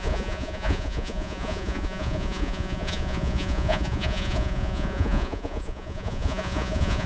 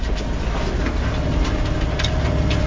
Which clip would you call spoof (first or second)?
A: first